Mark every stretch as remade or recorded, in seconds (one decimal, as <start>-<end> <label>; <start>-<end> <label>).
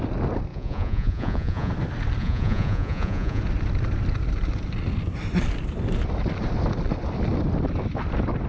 0.0-0.5 recorded; 0.5-1.7 remade; 1.7-2.2 recorded; 2.2-3.4 remade; 3.4-8.5 recorded